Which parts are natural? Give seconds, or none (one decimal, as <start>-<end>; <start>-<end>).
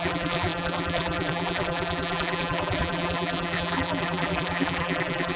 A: none